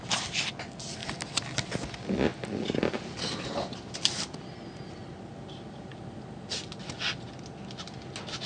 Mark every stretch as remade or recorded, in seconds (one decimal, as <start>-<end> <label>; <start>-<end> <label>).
0.0-8.5 recorded